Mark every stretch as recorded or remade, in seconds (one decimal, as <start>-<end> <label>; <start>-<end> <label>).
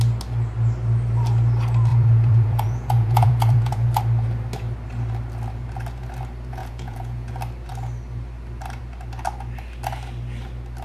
0.0-1.9 recorded; 1.9-4.0 remade; 4.0-6.6 recorded; 6.6-7.3 remade; 7.3-10.8 recorded